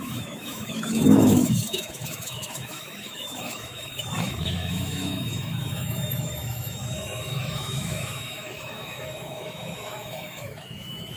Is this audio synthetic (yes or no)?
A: yes